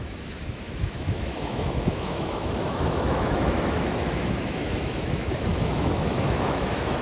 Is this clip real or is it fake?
fake